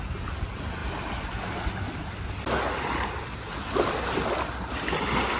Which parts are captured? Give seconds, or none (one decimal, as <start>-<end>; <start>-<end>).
0.0-5.4